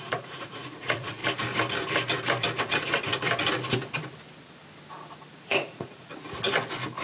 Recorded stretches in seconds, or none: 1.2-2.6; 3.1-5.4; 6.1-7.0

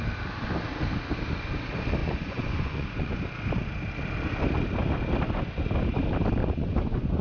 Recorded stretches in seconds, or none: 0.0-2.0; 3.2-6.4

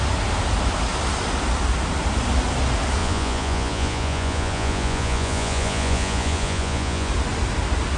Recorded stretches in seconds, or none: 0.0-3.0; 7.1-8.0

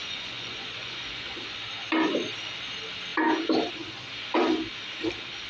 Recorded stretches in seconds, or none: 1.4-5.5

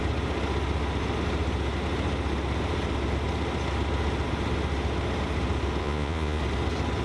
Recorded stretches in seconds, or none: 0.0-5.8; 6.4-7.0

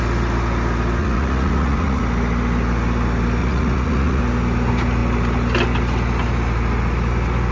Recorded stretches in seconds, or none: 0.0-1.0; 2.0-3.4; 4.2-7.5

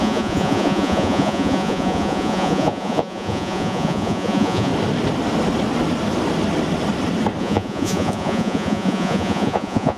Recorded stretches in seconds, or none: 4.7-7.4

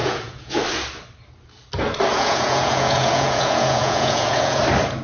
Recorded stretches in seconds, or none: 0.6-2.1; 4.6-5.0